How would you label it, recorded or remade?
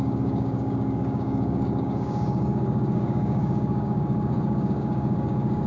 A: remade